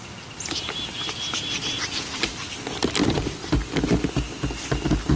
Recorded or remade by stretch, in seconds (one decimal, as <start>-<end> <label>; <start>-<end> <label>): 0.0-3.0 recorded; 3.0-4.1 remade; 4.1-5.2 recorded